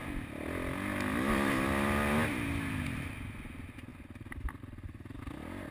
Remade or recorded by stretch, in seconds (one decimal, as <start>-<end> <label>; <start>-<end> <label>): 0.0-3.9 recorded; 3.9-5.2 remade; 5.2-5.7 recorded